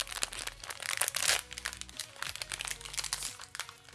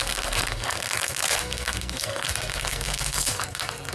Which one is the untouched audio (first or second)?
first